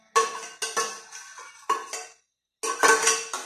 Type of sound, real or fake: real